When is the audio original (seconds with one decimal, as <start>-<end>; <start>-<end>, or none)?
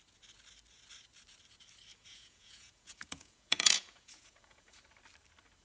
0.0-1.9; 4.8-5.6